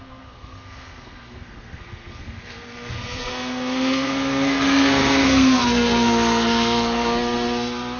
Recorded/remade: remade